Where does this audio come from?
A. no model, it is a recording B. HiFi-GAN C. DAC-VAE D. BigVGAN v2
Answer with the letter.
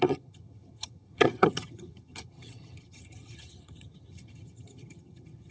B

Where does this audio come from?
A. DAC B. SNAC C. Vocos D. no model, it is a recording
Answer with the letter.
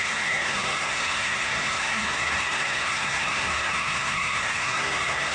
B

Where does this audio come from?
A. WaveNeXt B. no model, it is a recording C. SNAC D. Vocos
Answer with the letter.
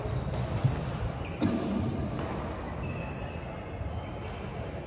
B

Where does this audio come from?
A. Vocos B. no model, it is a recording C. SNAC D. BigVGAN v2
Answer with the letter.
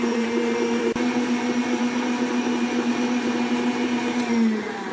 D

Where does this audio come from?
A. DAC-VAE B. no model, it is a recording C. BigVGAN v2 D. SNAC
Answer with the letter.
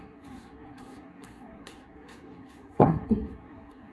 D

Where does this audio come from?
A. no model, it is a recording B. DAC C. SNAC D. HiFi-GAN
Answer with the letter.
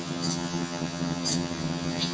D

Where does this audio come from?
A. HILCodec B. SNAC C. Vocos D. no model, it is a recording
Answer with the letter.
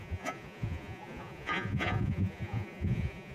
C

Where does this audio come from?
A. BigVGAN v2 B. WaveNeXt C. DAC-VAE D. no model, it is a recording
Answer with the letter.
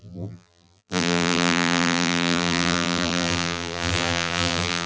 A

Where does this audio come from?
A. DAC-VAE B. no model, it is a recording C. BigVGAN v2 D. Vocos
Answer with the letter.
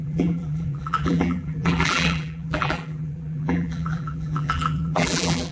C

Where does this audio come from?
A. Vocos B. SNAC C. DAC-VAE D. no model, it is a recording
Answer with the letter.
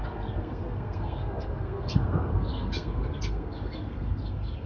B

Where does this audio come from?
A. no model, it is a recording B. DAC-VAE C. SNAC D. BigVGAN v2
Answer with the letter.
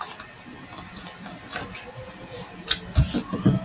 A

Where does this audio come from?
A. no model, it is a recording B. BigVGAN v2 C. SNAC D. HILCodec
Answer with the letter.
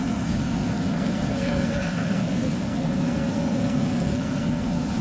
C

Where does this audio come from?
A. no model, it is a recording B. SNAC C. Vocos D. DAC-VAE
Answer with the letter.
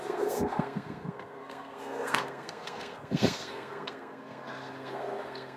B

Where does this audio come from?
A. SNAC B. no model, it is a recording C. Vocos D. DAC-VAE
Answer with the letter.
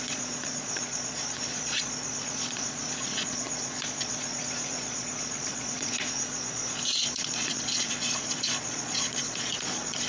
C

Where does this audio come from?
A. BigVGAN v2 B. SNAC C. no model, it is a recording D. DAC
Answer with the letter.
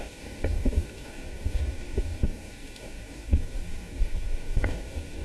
D